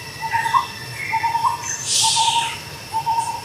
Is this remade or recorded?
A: recorded